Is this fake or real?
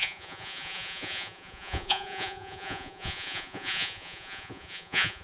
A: fake